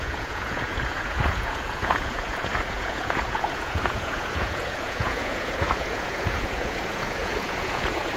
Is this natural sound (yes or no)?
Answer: no